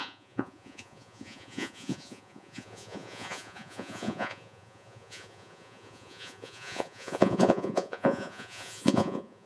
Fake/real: fake